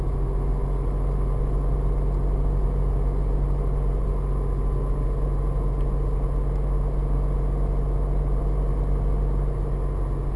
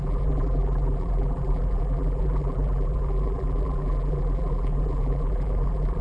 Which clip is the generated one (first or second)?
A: second